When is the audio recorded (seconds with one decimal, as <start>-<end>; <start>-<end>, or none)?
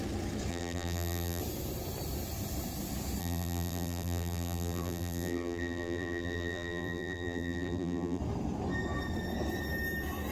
0.0-0.5; 1.4-3.2; 8.2-10.3